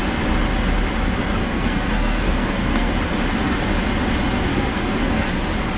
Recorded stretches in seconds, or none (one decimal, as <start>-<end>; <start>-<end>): 0.0-1.4; 2.9-4.5; 5.3-5.8

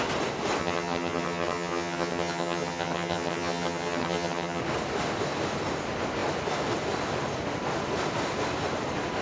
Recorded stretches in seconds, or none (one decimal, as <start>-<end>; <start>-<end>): 0.0-0.6; 4.6-9.2

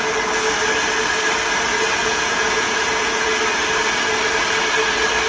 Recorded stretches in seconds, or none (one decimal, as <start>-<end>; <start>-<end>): 0.0-2.0; 3.3-5.3